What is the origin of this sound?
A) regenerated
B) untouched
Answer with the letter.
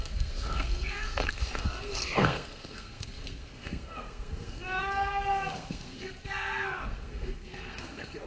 A